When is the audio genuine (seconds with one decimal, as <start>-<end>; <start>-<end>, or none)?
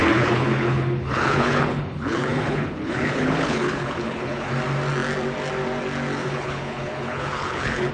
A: 4.5-6.2